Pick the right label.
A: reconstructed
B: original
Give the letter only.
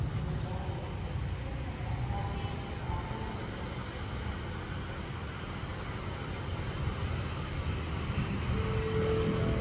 B